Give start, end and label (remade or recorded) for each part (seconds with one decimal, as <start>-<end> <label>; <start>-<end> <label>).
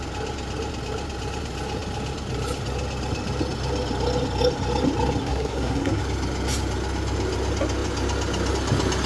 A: 0.0-5.2 recorded; 5.2-6.0 remade; 6.0-9.1 recorded